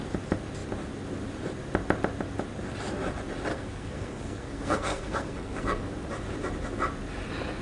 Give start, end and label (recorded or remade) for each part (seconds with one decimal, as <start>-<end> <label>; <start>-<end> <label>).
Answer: 0.0-3.5 recorded; 3.5-5.8 remade; 5.8-7.6 recorded